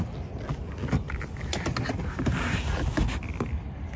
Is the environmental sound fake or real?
real